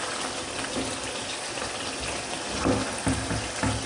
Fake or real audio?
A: real